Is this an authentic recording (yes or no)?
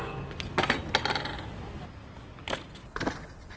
yes